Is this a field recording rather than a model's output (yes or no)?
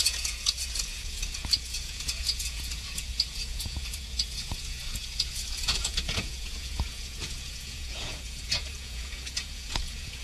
no